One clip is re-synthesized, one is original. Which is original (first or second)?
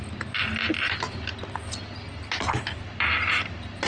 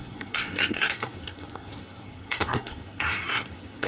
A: first